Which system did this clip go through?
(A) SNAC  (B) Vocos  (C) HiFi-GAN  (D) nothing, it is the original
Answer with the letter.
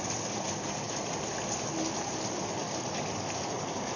D